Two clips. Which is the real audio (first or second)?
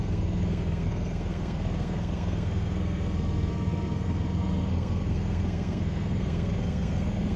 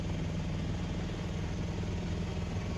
second